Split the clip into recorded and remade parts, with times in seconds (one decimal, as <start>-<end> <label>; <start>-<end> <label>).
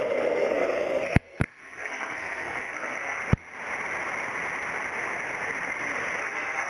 0.0-3.2 remade; 3.2-6.2 recorded; 6.2-6.7 remade